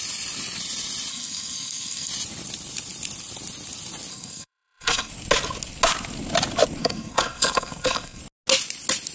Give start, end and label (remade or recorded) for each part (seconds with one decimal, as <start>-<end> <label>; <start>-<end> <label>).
0.0-1.1 recorded; 1.1-2.1 remade; 2.1-4.1 recorded; 4.1-5.1 remade; 5.1-6.8 recorded; 6.8-8.2 remade; 8.2-9.1 recorded